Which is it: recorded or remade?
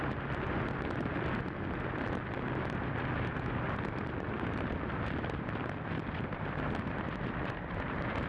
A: remade